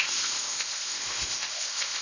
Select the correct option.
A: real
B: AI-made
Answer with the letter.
B